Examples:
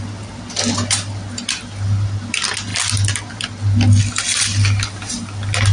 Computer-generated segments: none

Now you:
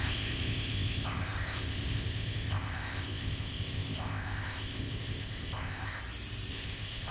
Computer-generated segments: 0.0-6.0; 6.5-7.1

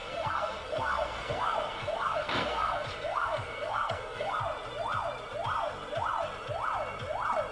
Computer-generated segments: 0.0-4.4

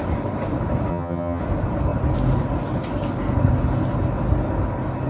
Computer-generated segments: 0.9-1.4

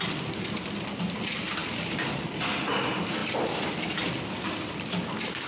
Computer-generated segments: none